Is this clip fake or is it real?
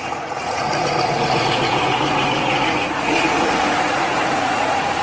fake